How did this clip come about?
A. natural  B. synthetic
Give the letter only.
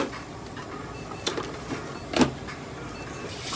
B